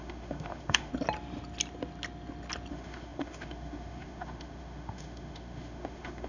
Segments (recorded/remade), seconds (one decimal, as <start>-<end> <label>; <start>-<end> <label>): 0.0-0.9 remade; 0.9-2.7 recorded; 2.7-6.3 remade